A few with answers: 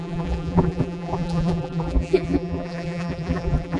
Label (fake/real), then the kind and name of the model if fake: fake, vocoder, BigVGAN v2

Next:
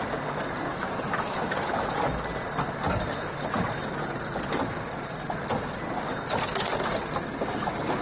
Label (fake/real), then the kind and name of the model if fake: real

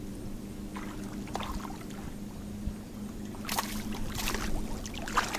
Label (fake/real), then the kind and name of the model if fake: real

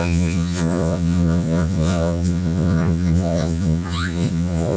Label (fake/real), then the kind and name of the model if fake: fake, vocoder, Vocos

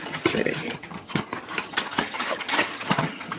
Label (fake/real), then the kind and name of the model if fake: fake, vocoder, HiFi-GAN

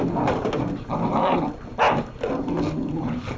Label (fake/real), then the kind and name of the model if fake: real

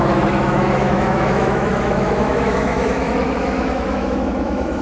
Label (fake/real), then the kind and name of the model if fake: fake, autoencoder, DAC-VAE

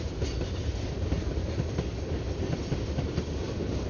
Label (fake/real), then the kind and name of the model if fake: fake, vocoder, BigVGAN v2